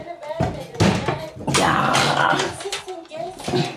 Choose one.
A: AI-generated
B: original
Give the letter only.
B